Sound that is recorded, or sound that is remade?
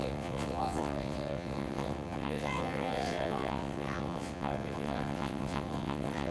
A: remade